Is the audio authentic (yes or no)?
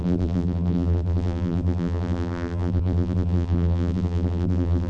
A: no